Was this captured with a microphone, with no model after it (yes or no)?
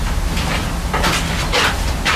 yes